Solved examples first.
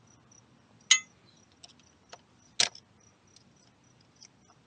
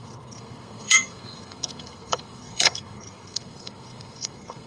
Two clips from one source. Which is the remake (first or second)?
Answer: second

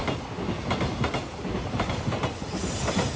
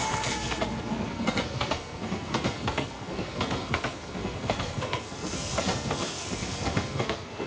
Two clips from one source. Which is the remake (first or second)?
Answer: second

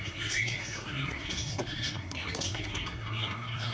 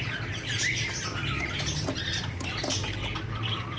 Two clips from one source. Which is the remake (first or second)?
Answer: first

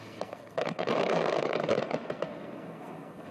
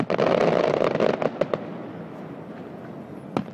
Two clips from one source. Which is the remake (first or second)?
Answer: first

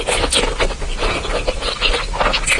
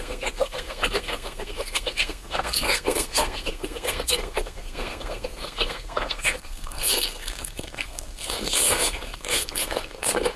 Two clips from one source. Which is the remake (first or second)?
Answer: second